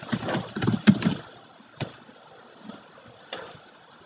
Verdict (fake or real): real